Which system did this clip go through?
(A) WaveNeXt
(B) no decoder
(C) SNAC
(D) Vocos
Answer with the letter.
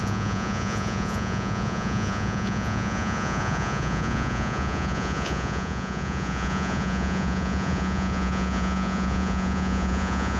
D